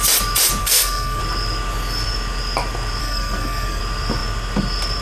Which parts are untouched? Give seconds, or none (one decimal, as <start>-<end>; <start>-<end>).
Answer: 0.0-0.6; 1.2-3.0; 3.8-5.0